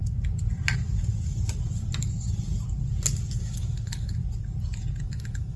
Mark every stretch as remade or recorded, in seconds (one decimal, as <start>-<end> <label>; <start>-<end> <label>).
0.0-3.4 recorded; 3.4-4.2 remade; 4.2-5.0 recorded; 5.0-5.6 remade